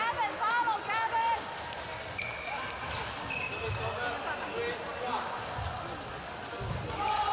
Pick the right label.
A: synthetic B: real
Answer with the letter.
B